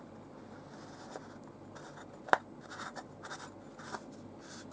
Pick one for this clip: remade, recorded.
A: recorded